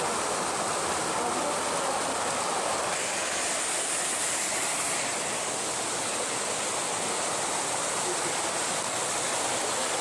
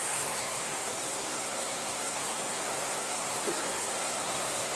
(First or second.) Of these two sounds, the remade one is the second